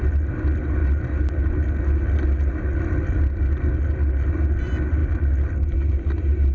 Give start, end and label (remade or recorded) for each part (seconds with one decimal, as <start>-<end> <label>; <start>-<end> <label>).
0.0-6.5 recorded